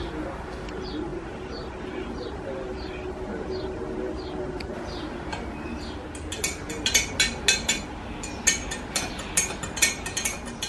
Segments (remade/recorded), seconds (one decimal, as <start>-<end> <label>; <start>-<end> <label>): 0.0-10.7 recorded

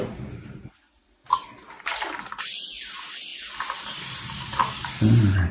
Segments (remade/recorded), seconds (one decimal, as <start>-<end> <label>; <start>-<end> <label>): 0.0-3.3 recorded; 3.3-5.5 remade

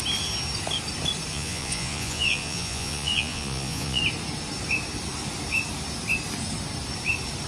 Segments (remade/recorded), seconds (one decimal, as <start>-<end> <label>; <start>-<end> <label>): 0.0-1.3 recorded; 1.3-4.0 remade; 4.0-7.5 recorded